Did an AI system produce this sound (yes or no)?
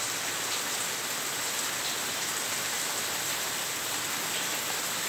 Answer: no